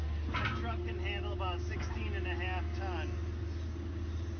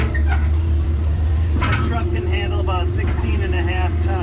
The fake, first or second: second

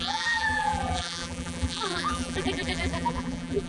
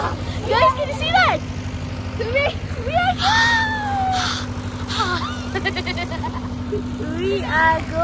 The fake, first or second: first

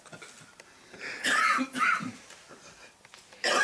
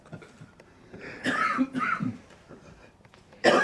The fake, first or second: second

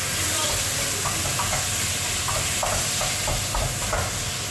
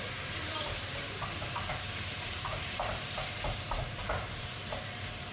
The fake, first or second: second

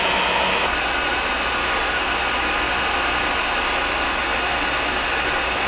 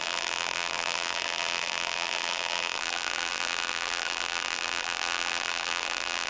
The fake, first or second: second